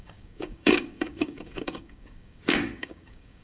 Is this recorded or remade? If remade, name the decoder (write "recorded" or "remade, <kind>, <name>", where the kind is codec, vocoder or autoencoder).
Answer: remade, codec, DAC